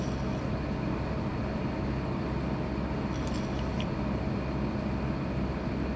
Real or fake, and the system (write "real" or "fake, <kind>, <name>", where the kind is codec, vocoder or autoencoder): real